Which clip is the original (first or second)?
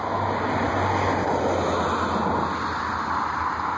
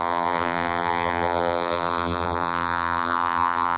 first